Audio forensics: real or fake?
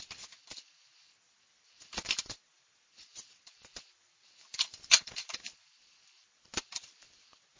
real